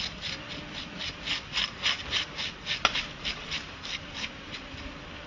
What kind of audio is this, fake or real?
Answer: real